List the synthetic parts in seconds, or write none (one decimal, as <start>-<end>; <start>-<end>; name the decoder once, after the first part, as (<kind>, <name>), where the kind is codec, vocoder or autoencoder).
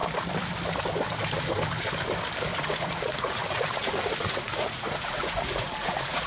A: 2.5-6.3 (vocoder, Vocos)